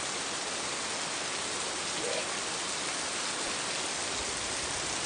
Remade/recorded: recorded